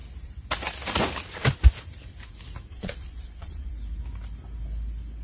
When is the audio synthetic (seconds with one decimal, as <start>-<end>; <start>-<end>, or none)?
2.7-3.7